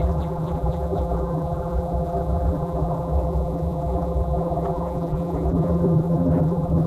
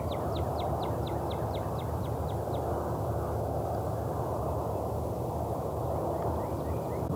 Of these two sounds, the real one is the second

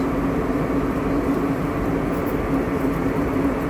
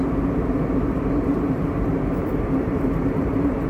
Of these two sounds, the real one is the first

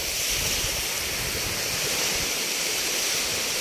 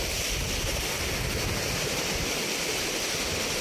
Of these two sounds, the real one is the second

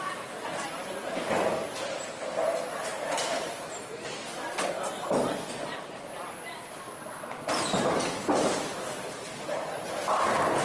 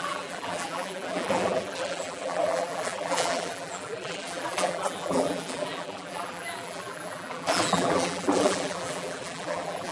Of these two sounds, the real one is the first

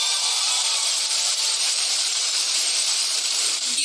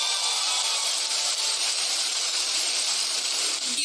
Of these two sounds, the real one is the second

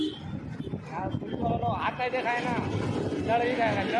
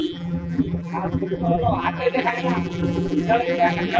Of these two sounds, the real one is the first